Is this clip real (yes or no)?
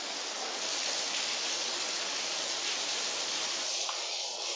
yes